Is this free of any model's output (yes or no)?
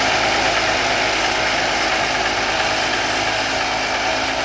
yes